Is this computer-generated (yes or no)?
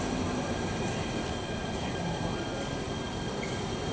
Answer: no